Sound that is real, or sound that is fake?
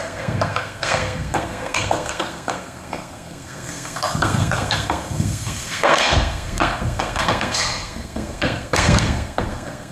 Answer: fake